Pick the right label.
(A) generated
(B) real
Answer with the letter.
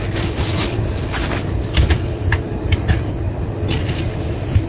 B